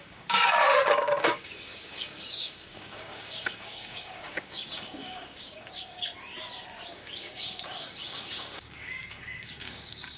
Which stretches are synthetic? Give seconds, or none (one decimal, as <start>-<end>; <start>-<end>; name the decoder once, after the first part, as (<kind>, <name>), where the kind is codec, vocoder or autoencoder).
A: 0.0-6.1 (codec, DAC); 6.9-10.2